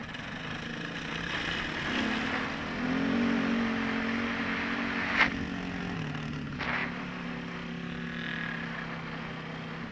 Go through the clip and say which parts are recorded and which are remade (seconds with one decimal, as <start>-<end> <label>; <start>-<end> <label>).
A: 0.0-9.9 recorded

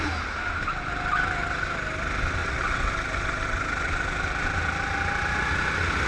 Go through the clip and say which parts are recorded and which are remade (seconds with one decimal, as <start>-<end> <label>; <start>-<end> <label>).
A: 0.0-2.4 recorded; 2.4-2.9 remade; 2.9-6.1 recorded

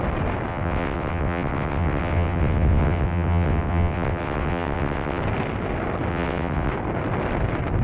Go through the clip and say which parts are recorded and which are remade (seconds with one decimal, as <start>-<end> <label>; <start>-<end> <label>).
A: 0.0-0.5 recorded; 0.5-5.2 remade; 5.2-6.1 recorded; 6.1-6.7 remade; 6.7-7.8 recorded

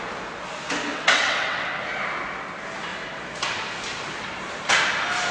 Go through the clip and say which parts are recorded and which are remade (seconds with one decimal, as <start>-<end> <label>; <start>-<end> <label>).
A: 0.0-0.9 recorded; 0.9-1.8 remade; 1.8-5.3 recorded

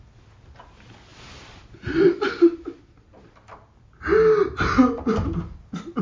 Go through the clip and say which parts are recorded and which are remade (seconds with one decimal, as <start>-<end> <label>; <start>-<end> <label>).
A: 0.0-6.0 recorded

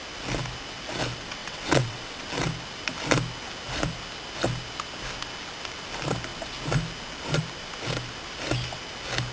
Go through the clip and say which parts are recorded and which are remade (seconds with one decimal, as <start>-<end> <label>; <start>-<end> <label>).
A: 0.0-1.4 recorded; 1.4-2.3 remade; 2.3-9.3 recorded

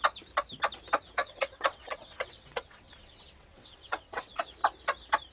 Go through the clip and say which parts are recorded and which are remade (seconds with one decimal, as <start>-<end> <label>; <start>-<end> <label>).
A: 0.0-1.2 recorded; 1.2-4.4 remade; 4.4-5.3 recorded

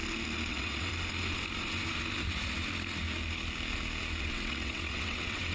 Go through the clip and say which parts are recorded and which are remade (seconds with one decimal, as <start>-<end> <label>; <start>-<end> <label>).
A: 0.0-0.5 recorded; 0.5-0.9 remade; 0.9-4.2 recorded; 4.2-5.5 remade